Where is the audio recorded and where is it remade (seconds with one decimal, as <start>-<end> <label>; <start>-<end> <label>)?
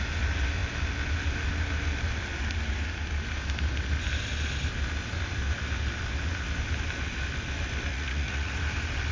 0.0-7.9 recorded; 7.9-8.5 remade; 8.5-9.1 recorded